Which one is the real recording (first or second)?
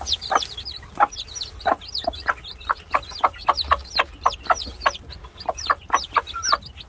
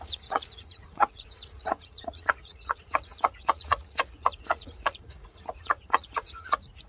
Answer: first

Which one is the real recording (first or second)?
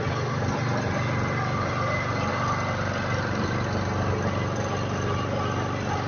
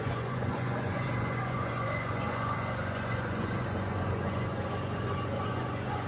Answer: first